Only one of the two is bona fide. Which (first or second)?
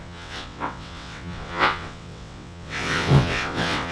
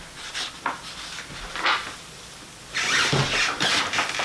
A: second